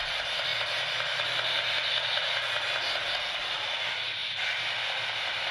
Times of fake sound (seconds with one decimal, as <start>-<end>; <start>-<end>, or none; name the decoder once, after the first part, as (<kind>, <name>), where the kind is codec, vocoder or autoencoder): none